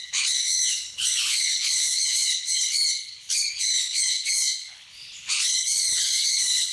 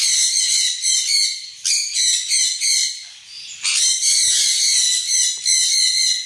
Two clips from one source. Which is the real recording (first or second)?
second